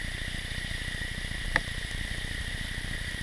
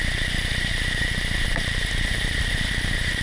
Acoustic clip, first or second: first